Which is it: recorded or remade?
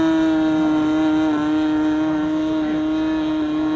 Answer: recorded